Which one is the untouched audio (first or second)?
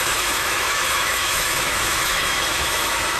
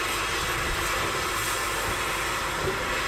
second